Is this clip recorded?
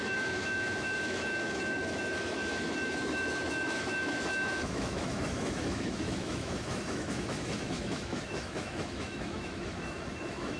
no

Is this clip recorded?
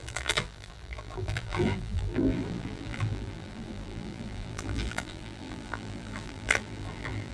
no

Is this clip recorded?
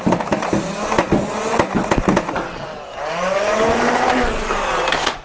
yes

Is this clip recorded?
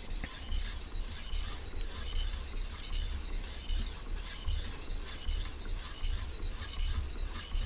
yes